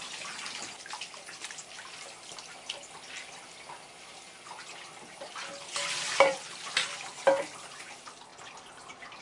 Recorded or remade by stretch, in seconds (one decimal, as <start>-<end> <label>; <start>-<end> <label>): 0.0-9.2 recorded